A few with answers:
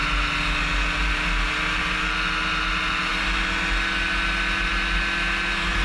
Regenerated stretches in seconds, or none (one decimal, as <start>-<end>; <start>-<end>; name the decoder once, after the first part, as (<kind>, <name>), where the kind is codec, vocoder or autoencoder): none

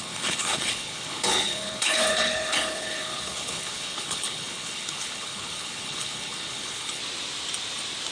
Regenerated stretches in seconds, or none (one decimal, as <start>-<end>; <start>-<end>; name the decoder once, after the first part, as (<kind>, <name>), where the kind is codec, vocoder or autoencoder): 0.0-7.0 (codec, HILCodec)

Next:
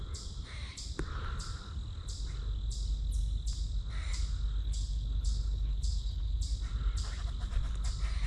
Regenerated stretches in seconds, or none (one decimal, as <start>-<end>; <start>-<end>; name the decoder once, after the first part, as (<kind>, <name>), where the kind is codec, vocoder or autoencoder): 4.6-6.4 (codec, HILCodec)

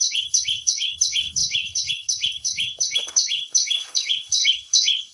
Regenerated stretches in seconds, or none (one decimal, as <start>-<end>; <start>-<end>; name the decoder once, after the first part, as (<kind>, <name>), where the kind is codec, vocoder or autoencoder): 0.0-5.1 (codec, HILCodec)

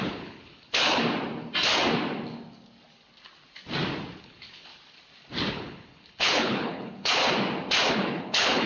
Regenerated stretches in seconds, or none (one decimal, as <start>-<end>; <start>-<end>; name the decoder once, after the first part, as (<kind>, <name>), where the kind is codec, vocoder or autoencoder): 0.0-1.0 (codec, HILCodec); 4.2-4.7; 5.5-7.2; 7.9-8.7

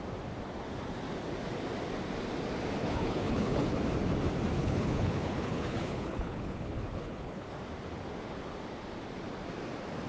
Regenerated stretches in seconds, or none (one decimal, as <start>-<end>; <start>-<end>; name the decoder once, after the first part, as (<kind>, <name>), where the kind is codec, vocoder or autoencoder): 2.8-3.8 (codec, HILCodec); 4.6-7.5

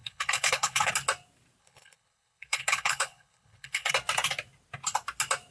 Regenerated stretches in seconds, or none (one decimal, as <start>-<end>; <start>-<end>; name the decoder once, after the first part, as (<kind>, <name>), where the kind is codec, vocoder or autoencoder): 0.0-0.9 (codec, HILCodec); 1.6-3.9